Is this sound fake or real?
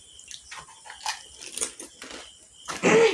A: real